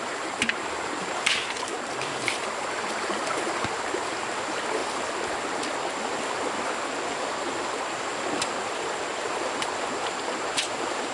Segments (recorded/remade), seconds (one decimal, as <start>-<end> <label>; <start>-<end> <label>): 0.0-4.8 remade; 4.8-7.0 recorded; 7.0-11.1 remade

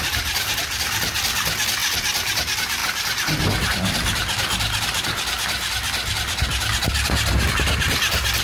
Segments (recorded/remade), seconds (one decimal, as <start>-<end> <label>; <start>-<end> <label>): 0.0-8.4 recorded

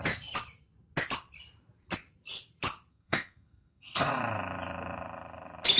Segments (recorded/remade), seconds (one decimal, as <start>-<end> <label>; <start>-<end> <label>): 0.0-2.9 recorded; 2.9-4.1 remade; 4.1-5.8 recorded

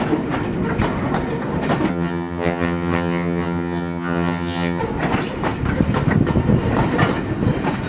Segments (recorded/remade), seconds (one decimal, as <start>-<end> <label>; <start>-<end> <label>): 0.0-1.9 recorded; 1.9-4.8 remade; 4.8-7.9 recorded

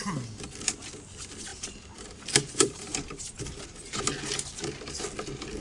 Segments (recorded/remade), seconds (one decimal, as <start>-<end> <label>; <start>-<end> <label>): 0.0-1.5 recorded; 1.5-4.0 remade; 4.0-5.6 recorded

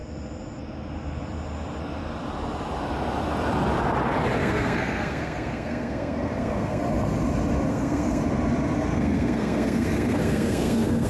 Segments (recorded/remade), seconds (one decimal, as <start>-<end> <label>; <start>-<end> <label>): 0.0-4.4 recorded; 4.4-6.8 remade; 6.8-7.7 recorded; 7.7-8.2 remade; 8.2-8.9 recorded; 8.9-11.1 remade